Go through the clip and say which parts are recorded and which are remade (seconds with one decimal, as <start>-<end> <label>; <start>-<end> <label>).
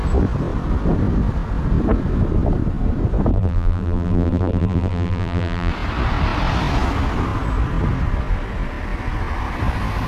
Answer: 0.0-3.3 recorded; 3.3-5.7 remade; 5.7-10.1 recorded